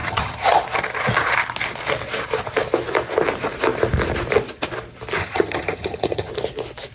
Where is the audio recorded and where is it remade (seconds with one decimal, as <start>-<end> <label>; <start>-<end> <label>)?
0.0-0.6 remade; 0.6-5.2 recorded; 5.2-6.3 remade; 6.3-6.9 recorded